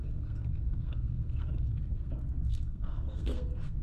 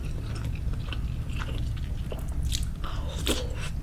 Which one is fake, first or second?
first